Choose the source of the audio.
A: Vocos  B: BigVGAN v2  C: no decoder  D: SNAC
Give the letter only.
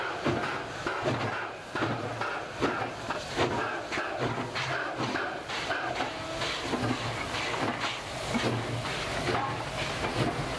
C